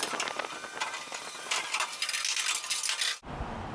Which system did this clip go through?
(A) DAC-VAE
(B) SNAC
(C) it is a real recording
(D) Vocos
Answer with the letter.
C